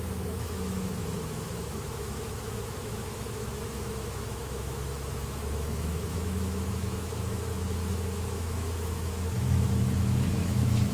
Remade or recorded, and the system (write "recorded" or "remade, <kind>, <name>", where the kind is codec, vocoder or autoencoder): remade, autoencoder, DAC-VAE